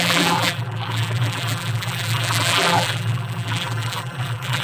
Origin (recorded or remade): remade